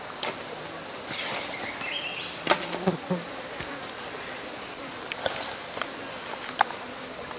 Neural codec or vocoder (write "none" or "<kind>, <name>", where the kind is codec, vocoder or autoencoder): none